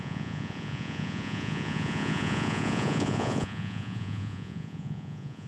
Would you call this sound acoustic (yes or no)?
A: no